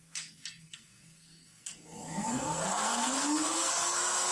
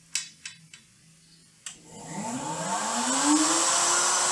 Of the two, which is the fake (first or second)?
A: first